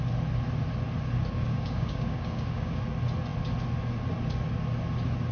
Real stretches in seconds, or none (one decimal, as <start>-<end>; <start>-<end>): 0.0-1.3; 2.8-5.3